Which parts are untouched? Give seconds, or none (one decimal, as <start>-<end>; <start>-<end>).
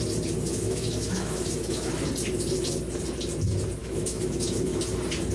0.0-0.5; 1.9-3.8; 4.8-5.3